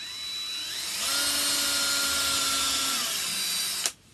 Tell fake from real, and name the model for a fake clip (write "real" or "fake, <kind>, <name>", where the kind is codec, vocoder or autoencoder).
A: real